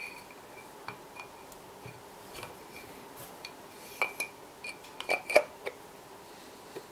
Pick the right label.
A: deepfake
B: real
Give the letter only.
B